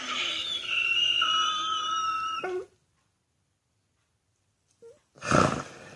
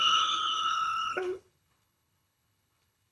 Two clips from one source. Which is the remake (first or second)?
second